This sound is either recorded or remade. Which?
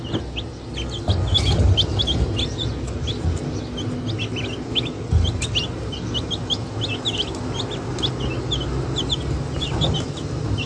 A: recorded